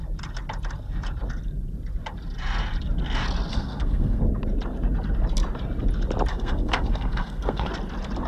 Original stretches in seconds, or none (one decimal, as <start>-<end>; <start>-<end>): 0.0-3.5; 4.2-6.3; 7.7-8.3